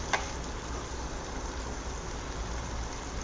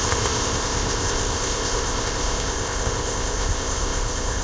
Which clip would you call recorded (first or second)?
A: first